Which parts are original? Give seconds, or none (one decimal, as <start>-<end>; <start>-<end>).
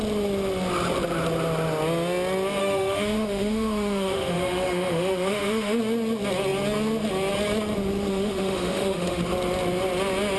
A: 0.0-2.6; 5.8-8.1; 9.2-10.4